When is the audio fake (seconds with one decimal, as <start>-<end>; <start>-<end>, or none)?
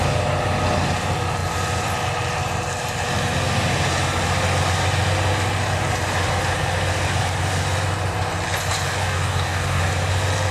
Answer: 9.0-9.8